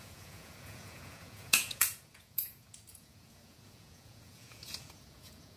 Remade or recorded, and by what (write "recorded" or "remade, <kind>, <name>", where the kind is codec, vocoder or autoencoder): remade, vocoder, Vocos